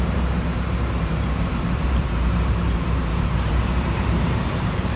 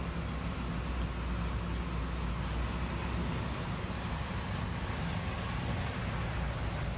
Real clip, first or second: second